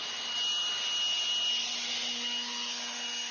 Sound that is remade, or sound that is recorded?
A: recorded